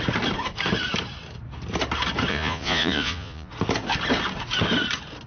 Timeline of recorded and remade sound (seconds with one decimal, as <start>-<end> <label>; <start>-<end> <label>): 0.0-2.3 recorded; 2.3-3.5 remade; 3.5-5.3 recorded